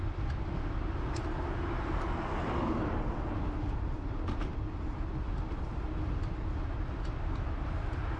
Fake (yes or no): no